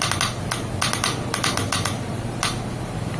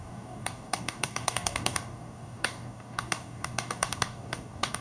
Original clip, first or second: first